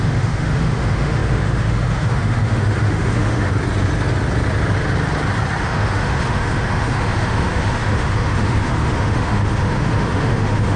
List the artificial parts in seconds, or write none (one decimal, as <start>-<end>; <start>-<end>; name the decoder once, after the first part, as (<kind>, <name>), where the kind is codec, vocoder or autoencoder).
0.0-3.5 (autoencoder, DAC-VAE); 5.6-10.8